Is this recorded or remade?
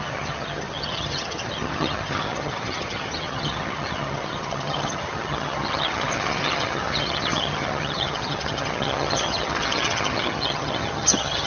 remade